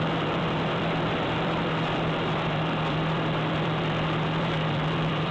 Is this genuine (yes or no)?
no